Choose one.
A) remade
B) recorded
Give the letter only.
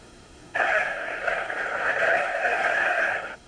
A